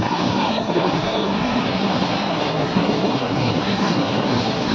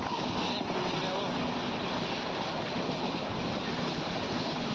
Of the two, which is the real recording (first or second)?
second